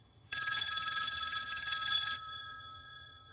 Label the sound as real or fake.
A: fake